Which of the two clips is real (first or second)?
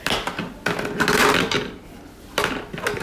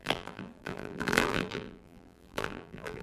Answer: first